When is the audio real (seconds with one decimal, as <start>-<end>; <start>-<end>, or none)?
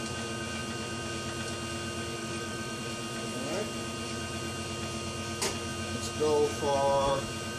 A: 0.0-2.2; 2.8-7.6